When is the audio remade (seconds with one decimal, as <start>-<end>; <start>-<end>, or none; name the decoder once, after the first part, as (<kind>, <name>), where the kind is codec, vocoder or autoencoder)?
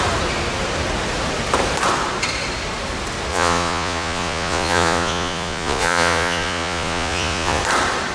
3.3-7.6 (vocoder, Vocos)